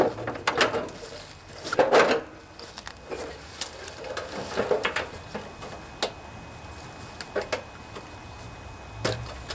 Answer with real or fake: real